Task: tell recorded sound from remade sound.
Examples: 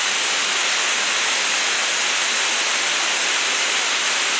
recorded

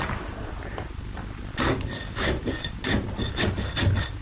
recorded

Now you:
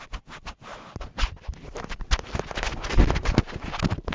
recorded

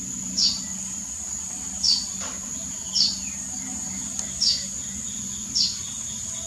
recorded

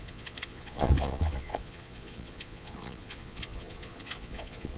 remade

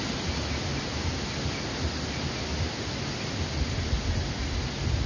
recorded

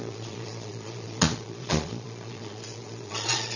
remade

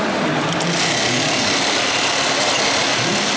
recorded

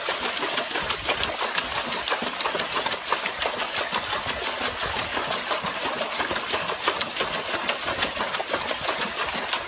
recorded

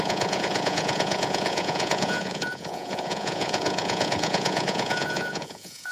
remade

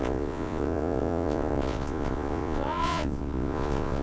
remade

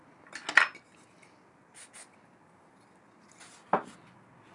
recorded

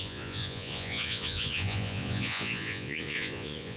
remade